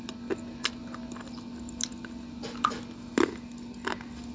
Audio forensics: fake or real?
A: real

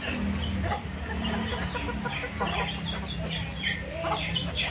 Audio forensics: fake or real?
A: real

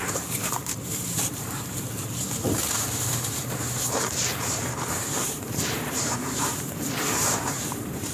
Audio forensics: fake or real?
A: fake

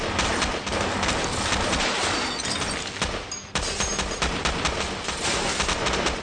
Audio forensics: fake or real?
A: real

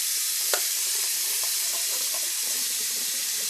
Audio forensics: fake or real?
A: fake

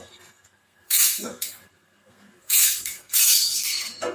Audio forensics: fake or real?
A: fake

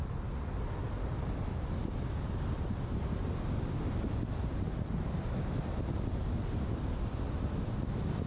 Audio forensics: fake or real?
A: real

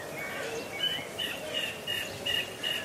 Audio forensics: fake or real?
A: real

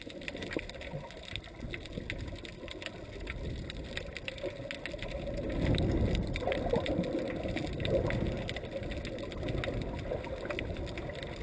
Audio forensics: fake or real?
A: real